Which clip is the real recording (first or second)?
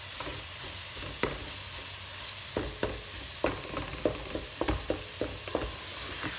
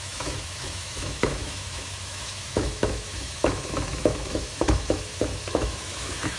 first